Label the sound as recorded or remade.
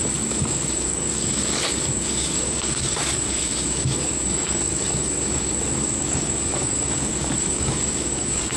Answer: remade